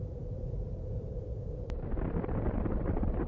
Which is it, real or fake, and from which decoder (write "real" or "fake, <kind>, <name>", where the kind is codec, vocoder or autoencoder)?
fake, vocoder, BigVGAN v2